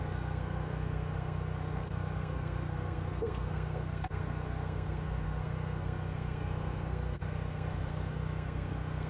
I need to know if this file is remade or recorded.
remade